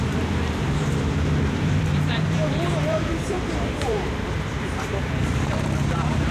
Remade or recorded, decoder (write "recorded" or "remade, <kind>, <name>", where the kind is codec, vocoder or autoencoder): remade, vocoder, BigVGAN v2